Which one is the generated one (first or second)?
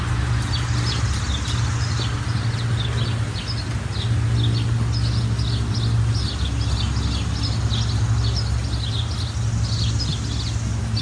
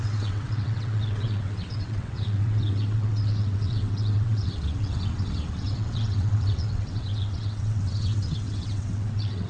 second